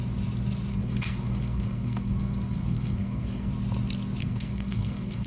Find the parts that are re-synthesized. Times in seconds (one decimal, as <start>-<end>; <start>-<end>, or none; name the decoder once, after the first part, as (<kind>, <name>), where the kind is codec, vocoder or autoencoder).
0.7-3.5 (codec, SNAC); 4.2-5.3